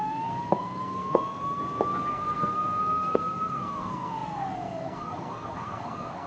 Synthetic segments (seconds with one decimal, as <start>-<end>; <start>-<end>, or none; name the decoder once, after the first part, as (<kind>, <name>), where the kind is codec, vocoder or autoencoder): 0.0-1.6 (codec, SNAC); 2.1-6.3